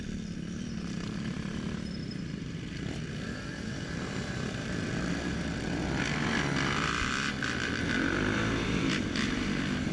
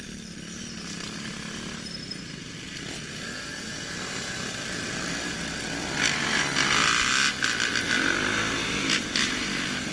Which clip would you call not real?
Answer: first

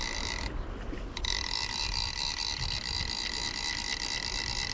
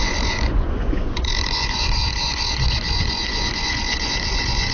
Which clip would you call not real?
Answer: second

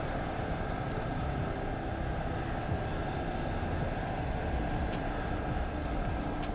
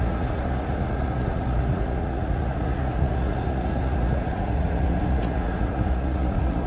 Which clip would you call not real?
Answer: second